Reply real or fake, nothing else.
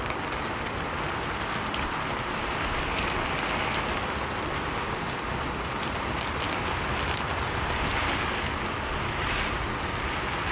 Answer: real